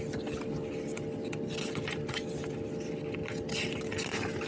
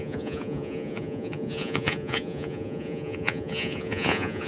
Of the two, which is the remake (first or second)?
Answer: second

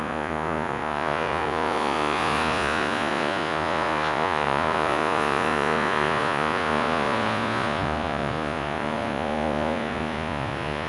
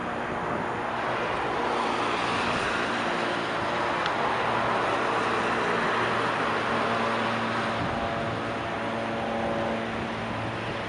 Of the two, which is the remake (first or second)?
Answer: first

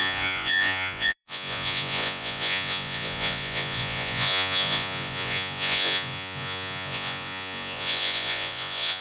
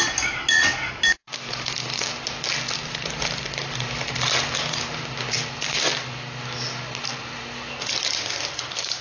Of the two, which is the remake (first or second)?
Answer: first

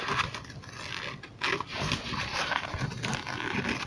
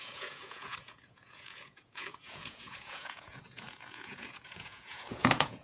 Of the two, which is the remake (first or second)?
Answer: second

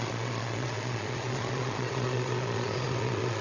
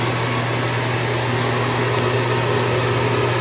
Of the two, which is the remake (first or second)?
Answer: first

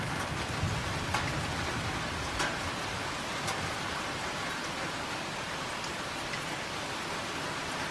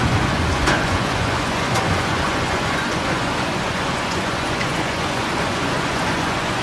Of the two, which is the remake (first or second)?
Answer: second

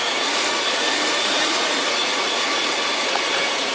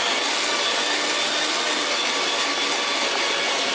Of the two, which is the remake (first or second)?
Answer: first